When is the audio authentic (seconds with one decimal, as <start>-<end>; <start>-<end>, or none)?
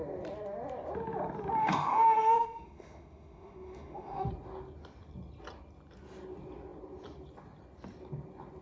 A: 0.0-1.6; 4.3-8.6